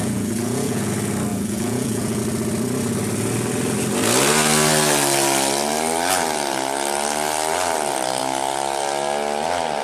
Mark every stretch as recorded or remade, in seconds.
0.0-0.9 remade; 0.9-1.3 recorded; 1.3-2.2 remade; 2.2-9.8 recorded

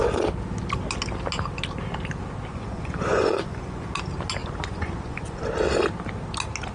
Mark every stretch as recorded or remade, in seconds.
0.0-2.5 recorded; 2.5-3.9 remade; 3.9-4.4 recorded; 4.4-5.4 remade; 5.4-6.7 recorded

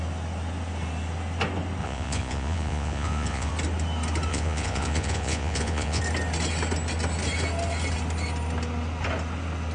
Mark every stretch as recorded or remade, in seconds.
0.0-1.8 recorded; 1.8-3.5 remade; 3.5-4.3 recorded; 4.3-6.0 remade; 6.0-9.7 recorded

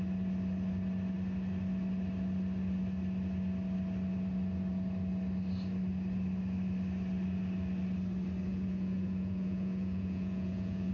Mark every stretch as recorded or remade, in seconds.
0.0-8.5 recorded; 8.5-10.9 remade

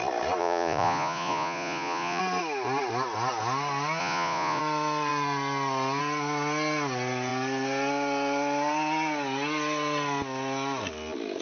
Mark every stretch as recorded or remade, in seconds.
0.0-0.4 recorded; 0.4-2.2 remade; 2.2-4.0 recorded; 4.0-4.6 remade; 4.6-11.4 recorded

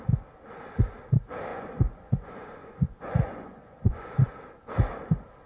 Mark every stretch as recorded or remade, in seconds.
0.0-1.5 recorded; 1.5-4.3 remade; 4.3-5.5 recorded

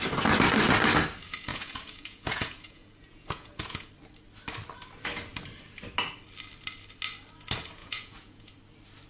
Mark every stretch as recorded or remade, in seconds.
0.0-1.5 recorded; 1.5-3.9 remade; 3.9-7.8 recorded; 7.8-8.5 remade; 8.5-9.1 recorded